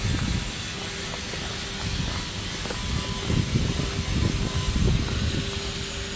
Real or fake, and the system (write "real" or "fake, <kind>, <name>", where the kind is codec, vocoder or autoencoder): real